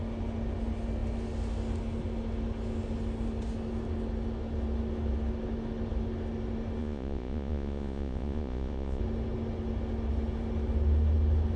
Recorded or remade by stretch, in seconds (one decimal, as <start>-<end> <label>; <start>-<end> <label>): 0.0-6.8 recorded; 6.8-9.0 remade; 9.0-11.6 recorded